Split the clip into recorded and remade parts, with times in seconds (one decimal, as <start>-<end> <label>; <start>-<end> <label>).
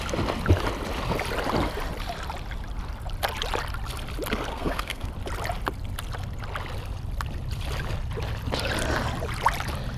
0.0-4.5 recorded; 4.5-5.1 remade; 5.1-10.0 recorded